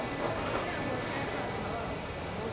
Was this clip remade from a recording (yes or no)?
no